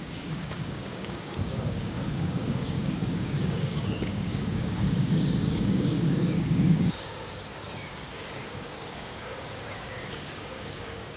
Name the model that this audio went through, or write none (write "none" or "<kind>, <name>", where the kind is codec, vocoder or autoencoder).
codec, DAC